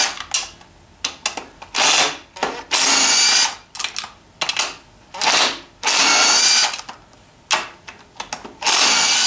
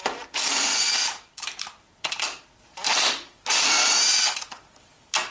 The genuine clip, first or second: first